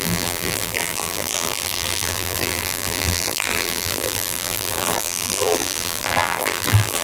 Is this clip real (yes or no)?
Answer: no